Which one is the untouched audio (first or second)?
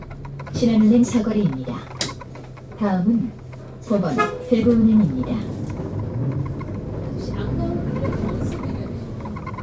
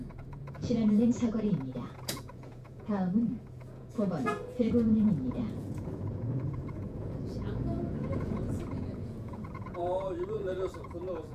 first